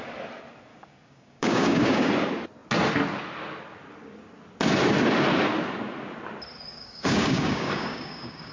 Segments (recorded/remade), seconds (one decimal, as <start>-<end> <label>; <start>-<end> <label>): 0.0-0.7 recorded; 0.7-2.1 remade; 2.1-6.7 recorded; 6.7-8.5 remade